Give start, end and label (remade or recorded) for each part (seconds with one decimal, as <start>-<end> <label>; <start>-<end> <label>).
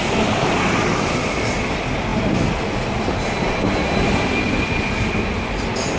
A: 0.0-2.1 recorded; 2.1-6.0 remade